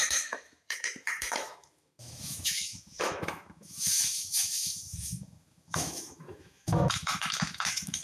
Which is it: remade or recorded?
remade